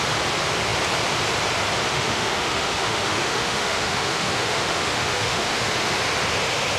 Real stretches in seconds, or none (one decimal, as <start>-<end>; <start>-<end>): 0.0-1.9; 6.0-6.8